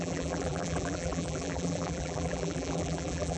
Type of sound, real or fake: fake